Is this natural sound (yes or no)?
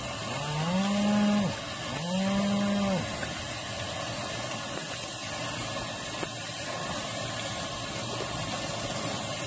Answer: yes